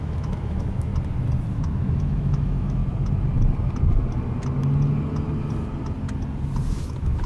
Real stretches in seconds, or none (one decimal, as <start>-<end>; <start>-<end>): 0.9-1.5; 2.8-6.7